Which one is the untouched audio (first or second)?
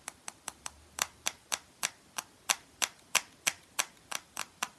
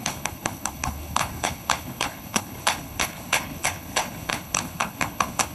first